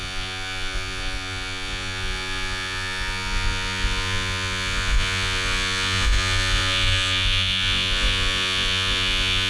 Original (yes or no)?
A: no